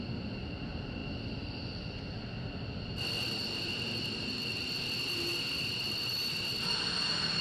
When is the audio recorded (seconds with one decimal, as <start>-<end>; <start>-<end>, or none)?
0.0-7.4